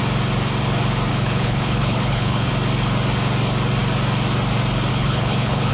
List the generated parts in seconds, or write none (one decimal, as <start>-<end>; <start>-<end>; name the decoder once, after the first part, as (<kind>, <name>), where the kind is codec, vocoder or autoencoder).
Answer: 1.1-2.5 (codec, HILCodec); 4.9-5.7